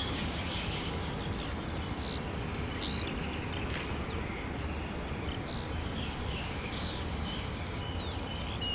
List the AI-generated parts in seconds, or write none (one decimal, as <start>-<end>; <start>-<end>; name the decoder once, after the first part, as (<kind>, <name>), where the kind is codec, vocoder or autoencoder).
0.0-1.1 (codec, DAC); 5.8-7.8